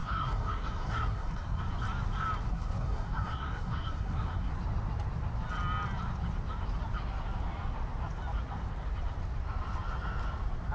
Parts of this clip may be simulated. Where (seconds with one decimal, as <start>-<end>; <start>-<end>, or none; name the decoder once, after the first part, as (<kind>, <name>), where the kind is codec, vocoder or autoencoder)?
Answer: 0.0-1.6 (codec, SNAC); 2.5-4.5